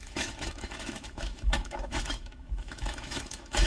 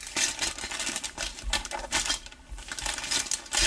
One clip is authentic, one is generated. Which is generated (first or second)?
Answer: first